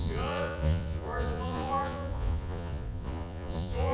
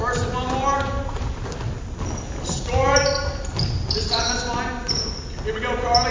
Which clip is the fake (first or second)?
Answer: first